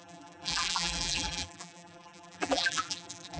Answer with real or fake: fake